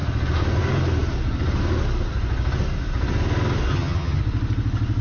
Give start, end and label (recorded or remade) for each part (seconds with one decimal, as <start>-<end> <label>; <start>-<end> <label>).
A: 0.0-3.7 recorded; 3.7-4.2 remade; 4.2-5.0 recorded